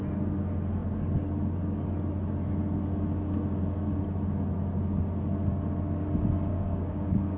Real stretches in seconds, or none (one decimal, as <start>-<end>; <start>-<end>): 0.0-6.5